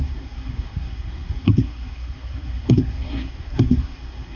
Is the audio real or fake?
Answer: fake